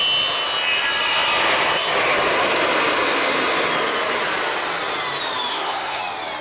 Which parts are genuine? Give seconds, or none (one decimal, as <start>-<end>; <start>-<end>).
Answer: 0.0-5.5; 6.0-6.4